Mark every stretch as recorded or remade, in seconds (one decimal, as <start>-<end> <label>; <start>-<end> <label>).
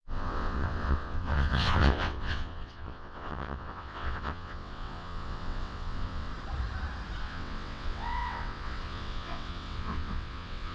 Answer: 0.0-6.3 remade; 6.3-7.2 recorded; 7.2-10.7 remade